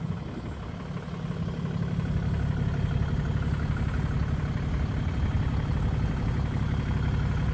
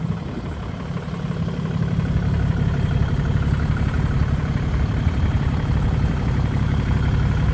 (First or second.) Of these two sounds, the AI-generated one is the second